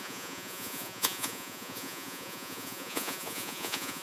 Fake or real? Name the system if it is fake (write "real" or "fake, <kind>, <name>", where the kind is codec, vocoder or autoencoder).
fake, vocoder, Vocos